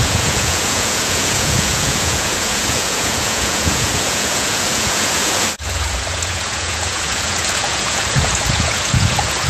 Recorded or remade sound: remade